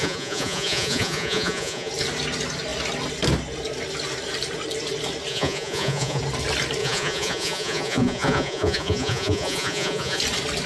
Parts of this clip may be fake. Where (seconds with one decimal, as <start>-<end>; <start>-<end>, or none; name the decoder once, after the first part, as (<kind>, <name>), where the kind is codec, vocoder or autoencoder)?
0.0-1.9 (vocoder, Vocos); 5.3-6.2; 6.8-10.2